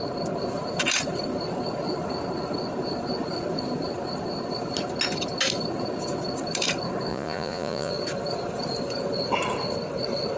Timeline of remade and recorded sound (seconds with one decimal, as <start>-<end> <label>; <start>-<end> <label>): 0.0-7.1 recorded; 7.1-7.9 remade; 7.9-10.4 recorded

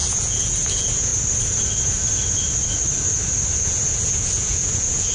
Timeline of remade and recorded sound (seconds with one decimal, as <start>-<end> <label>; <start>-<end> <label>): 0.0-1.1 remade; 1.1-3.6 recorded; 3.6-5.1 remade

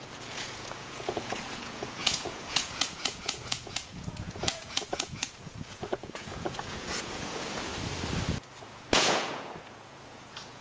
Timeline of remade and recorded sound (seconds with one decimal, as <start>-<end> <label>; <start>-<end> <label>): 0.0-7.7 remade; 7.7-8.6 recorded; 8.6-10.6 remade